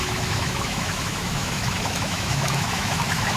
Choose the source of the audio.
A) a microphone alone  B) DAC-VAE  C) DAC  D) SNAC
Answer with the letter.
B